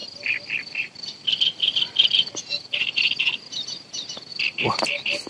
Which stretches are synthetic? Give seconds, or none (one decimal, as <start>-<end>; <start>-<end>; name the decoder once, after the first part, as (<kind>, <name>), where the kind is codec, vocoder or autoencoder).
0.0-3.2 (vocoder, BigVGAN v2); 4.3-5.3